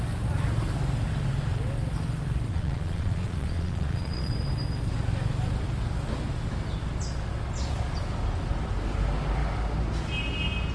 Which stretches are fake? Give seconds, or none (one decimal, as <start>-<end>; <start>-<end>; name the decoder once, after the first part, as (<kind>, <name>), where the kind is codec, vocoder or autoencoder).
2.5-4.3 (vocoder, Vocos)